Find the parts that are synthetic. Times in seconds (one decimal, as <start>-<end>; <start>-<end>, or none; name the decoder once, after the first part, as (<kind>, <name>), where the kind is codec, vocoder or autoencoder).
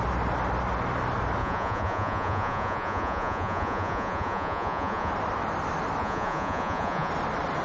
1.4-5.1 (vocoder, Vocos); 6.0-7.1